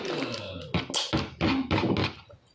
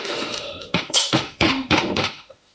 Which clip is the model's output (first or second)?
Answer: second